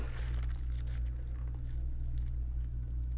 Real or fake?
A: real